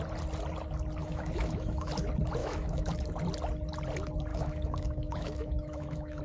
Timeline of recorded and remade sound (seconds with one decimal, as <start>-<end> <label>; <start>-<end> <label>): 0.0-1.0 recorded; 1.0-1.9 remade; 1.9-2.4 recorded; 2.4-3.0 remade; 3.0-4.3 recorded; 4.3-6.2 remade